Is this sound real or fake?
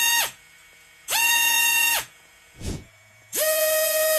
fake